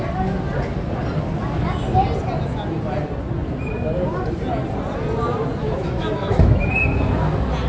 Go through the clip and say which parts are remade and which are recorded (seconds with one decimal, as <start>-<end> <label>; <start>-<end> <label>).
0.0-5.6 recorded; 5.6-6.7 remade; 6.7-7.7 recorded